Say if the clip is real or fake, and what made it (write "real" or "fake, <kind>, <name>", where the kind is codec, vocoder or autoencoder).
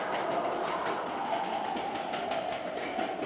real